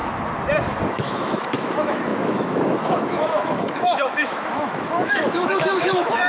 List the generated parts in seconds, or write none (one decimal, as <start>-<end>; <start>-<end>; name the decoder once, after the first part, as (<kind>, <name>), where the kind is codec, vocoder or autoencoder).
0.9-6.3 (autoencoder, DAC-VAE)